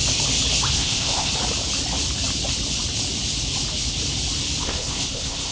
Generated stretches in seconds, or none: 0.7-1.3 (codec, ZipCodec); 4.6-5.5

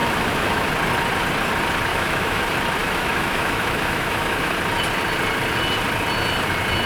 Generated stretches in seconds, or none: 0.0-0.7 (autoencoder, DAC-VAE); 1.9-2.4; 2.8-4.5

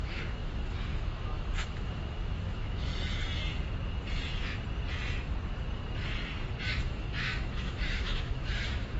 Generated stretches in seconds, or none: 0.0-2.9 (autoencoder, DAC-VAE); 6.6-9.0